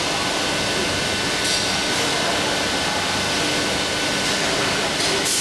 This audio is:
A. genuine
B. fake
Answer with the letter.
A